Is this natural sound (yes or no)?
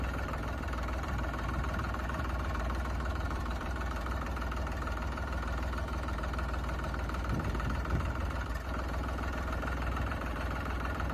no